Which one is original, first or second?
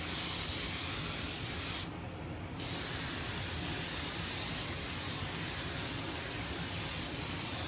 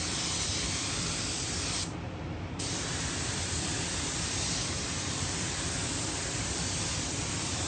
first